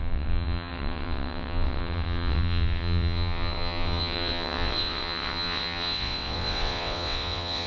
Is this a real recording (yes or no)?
no